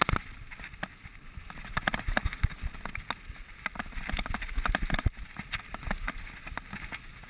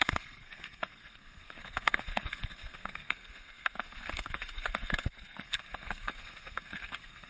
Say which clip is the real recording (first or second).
first